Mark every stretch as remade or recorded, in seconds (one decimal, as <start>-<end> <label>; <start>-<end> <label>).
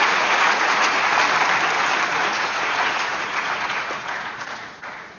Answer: 0.0-1.1 remade; 1.1-2.1 recorded; 2.1-5.2 remade